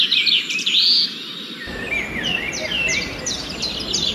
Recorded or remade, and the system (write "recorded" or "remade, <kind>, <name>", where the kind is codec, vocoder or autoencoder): recorded